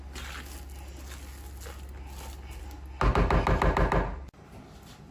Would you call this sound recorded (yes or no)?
yes